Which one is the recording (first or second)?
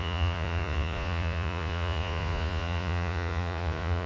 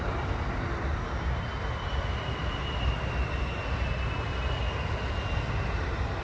second